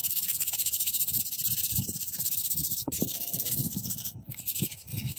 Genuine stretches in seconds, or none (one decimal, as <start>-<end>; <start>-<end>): 1.2-2.0